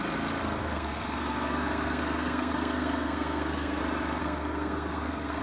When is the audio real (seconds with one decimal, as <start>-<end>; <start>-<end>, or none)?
0.0-0.6; 3.8-4.2